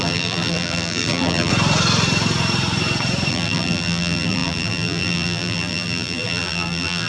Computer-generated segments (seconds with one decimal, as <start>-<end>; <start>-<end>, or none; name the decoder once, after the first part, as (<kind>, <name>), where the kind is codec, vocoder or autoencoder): 0.0-1.5 (vocoder, BigVGAN v2); 3.3-7.1